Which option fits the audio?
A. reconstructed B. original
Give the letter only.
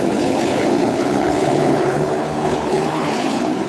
A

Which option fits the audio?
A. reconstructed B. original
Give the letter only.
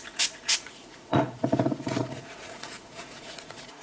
A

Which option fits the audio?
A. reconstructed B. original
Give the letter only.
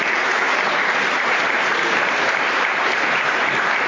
A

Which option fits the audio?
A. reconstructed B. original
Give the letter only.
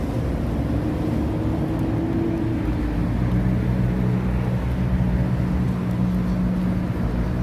B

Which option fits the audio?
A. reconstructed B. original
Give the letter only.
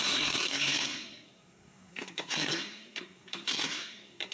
A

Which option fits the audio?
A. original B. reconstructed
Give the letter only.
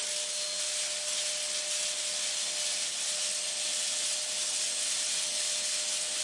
A